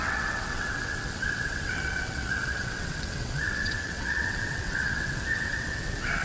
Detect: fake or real fake